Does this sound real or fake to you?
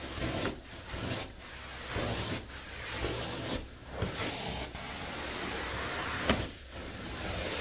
real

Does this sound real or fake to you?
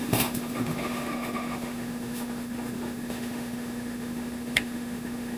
fake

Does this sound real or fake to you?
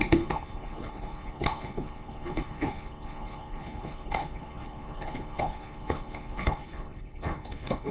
fake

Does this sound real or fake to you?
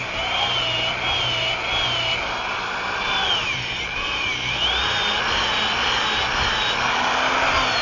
real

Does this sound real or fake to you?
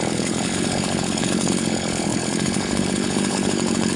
fake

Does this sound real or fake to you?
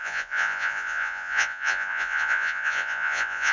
fake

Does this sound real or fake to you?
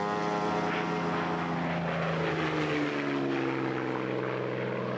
real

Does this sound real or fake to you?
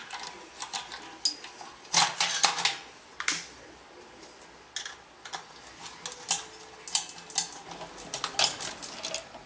real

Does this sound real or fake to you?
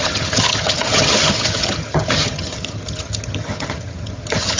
fake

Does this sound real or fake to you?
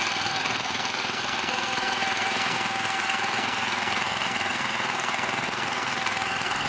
fake